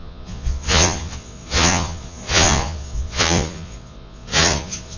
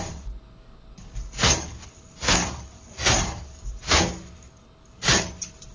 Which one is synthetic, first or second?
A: first